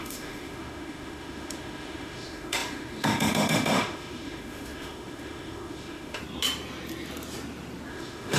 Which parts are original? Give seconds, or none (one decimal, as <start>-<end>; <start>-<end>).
6.2-7.9